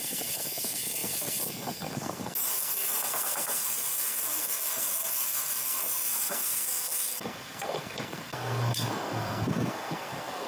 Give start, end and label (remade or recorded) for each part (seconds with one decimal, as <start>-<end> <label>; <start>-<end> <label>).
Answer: 0.0-10.5 remade